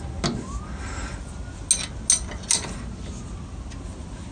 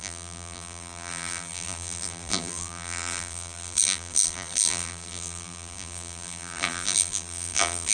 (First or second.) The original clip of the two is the first